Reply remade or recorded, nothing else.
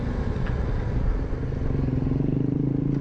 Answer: recorded